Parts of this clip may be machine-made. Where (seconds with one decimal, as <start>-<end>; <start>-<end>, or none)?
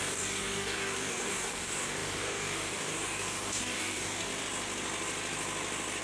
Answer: 0.0-4.3